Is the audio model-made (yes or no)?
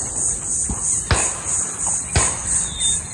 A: no